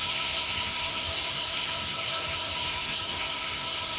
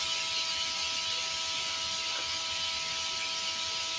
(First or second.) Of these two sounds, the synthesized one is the first